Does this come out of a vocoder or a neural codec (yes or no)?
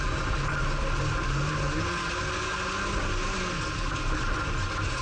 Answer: no